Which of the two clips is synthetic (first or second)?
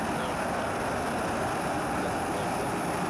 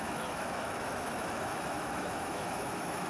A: second